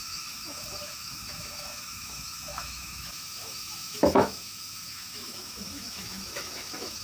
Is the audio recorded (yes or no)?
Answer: no